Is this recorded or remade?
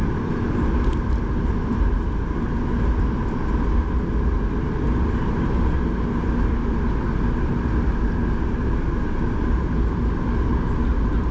recorded